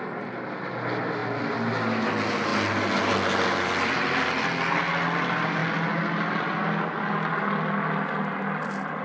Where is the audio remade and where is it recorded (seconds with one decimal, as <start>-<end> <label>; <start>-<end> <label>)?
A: 0.0-9.0 recorded